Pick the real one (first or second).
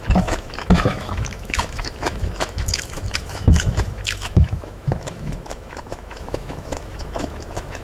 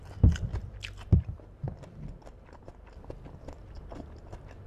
second